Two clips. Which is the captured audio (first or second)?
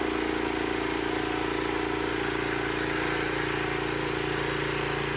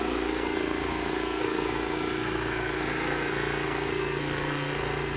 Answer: first